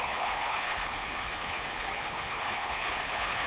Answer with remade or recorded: remade